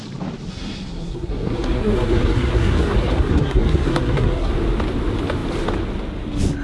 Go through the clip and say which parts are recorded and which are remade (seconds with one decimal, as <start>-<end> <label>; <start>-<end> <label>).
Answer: 0.0-0.5 recorded; 0.5-4.5 remade; 4.5-6.6 recorded

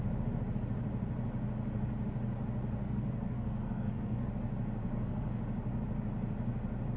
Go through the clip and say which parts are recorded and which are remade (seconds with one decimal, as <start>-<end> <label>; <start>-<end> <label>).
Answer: 0.0-2.8 recorded; 2.8-4.3 remade; 4.3-4.9 recorded; 4.9-5.4 remade; 5.4-7.0 recorded

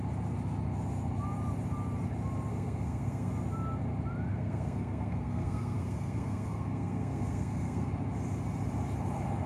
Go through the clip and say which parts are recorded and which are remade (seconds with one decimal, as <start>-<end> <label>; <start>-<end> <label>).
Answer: 0.0-2.5 recorded; 2.5-3.3 remade; 3.3-4.3 recorded; 4.3-7.9 remade; 7.9-9.5 recorded

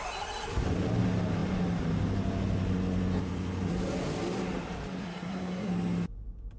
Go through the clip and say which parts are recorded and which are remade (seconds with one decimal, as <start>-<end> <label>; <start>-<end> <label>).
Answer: 0.0-5.0 recorded; 5.0-5.7 remade; 5.7-6.6 recorded

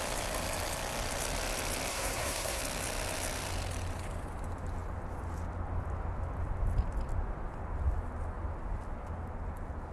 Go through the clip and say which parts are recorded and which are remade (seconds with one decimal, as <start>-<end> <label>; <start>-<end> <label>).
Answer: 0.0-1.9 recorded; 1.9-2.6 remade; 2.6-9.9 recorded

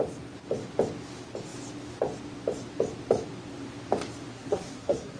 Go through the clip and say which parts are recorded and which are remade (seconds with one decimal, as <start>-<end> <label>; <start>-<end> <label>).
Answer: 0.0-4.3 recorded; 4.3-5.2 remade

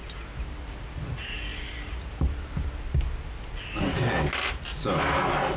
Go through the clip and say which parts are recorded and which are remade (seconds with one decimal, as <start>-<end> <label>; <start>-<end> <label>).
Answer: 0.0-5.6 recorded